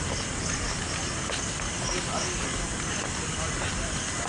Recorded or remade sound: recorded